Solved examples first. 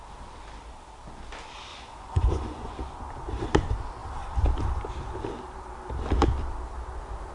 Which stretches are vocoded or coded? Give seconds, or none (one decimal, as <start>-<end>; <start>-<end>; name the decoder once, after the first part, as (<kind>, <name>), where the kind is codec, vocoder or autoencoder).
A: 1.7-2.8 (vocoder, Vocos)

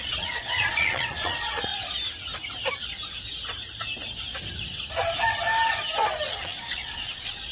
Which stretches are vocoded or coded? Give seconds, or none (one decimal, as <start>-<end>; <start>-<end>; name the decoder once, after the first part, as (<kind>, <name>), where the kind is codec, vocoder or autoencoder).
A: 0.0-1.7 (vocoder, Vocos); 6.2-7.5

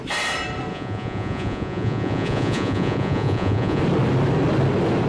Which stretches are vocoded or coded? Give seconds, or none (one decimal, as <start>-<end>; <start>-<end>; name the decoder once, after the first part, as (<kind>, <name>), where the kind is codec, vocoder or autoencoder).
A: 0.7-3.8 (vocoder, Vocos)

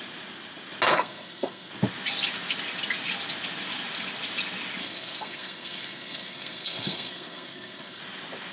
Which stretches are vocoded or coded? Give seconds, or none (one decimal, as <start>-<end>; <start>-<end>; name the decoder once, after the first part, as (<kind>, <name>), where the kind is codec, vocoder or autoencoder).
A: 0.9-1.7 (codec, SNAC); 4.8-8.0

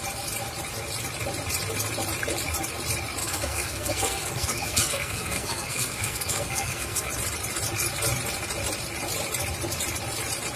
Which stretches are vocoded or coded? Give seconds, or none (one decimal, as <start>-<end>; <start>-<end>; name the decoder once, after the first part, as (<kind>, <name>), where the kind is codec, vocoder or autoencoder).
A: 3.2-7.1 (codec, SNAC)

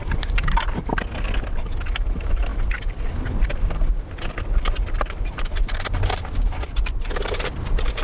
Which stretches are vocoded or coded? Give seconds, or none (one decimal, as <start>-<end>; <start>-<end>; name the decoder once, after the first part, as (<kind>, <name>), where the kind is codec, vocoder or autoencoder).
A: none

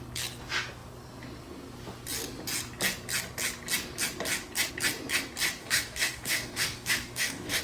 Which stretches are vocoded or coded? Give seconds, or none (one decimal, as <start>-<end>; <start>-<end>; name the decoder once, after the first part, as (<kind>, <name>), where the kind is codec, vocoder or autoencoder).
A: 5.6-7.6 (codec, DAC)